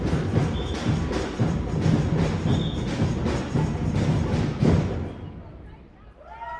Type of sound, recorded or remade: recorded